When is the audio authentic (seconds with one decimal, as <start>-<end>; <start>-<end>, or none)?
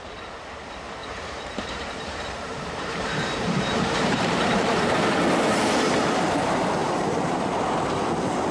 0.0-1.0; 5.2-6.8; 7.6-8.5